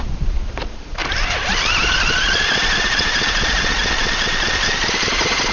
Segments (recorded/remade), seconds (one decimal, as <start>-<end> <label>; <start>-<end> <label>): 0.0-1.0 remade; 1.0-1.8 recorded; 1.8-3.8 remade; 3.8-5.1 recorded; 5.1-5.5 remade